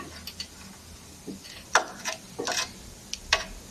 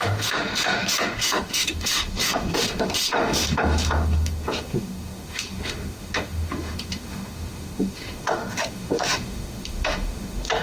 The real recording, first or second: first